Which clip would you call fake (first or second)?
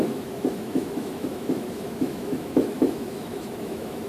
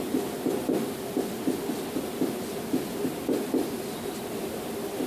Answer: first